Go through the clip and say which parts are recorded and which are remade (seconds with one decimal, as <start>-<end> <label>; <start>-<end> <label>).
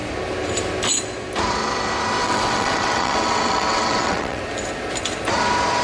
0.0-2.2 recorded; 2.2-4.4 remade; 4.4-5.8 recorded